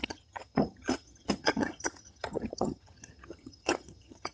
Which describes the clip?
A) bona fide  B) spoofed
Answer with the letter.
B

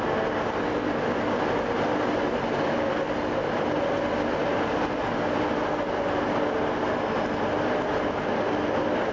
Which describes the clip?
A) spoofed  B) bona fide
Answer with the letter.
B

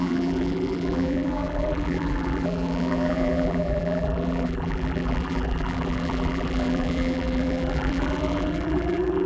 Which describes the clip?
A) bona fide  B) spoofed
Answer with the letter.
B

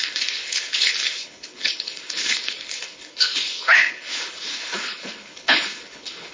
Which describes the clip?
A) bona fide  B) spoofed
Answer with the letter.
B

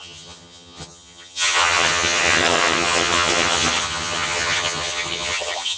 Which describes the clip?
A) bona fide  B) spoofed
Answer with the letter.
B